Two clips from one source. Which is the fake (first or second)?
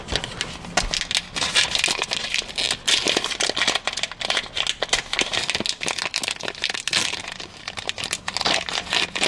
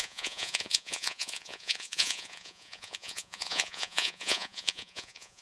second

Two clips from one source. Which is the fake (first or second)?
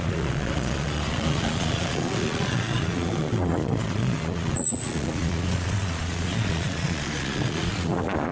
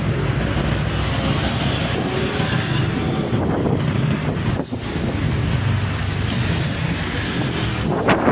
first